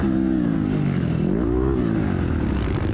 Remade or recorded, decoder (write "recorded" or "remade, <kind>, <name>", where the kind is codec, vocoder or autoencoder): recorded